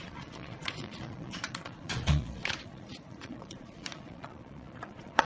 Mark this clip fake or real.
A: fake